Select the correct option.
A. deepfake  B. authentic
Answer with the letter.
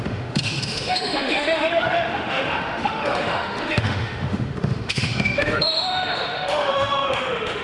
A